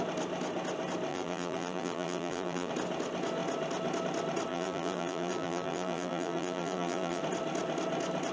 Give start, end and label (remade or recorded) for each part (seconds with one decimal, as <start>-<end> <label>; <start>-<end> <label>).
0.0-1.1 recorded; 1.1-2.7 remade; 2.7-4.5 recorded; 4.5-7.2 remade; 7.2-8.3 recorded